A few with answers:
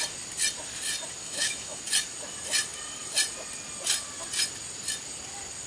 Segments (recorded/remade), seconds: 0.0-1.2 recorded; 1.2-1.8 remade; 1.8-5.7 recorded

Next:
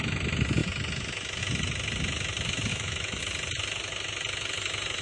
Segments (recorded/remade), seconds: 0.0-2.7 recorded; 2.7-3.2 remade; 3.2-5.0 recorded

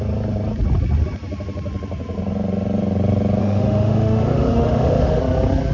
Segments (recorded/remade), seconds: 0.0-3.4 recorded; 3.4-5.2 remade; 5.2-5.7 recorded

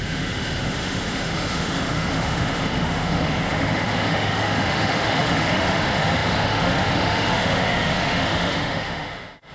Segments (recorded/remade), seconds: 0.0-9.5 remade